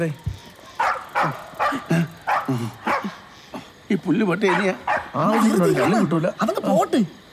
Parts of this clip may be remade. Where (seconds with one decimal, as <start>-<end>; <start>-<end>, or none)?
0.4-1.0; 5.2-6.5